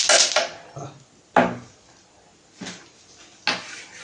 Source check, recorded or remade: recorded